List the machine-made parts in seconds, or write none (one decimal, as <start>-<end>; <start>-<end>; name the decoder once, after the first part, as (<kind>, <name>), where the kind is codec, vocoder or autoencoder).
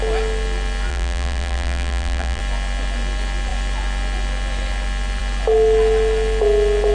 0.9-2.4 (vocoder, BigVGAN v2)